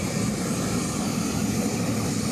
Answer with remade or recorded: recorded